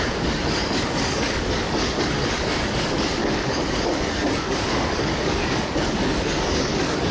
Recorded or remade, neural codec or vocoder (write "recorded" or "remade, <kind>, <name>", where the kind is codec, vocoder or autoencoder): remade, codec, DAC